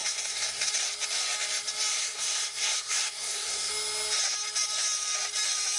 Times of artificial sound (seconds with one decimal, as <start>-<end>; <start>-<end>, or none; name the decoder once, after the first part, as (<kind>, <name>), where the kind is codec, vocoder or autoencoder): 0.0-0.7 (codec, SNAC); 1.9-3.7